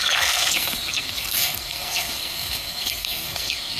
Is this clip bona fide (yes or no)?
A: no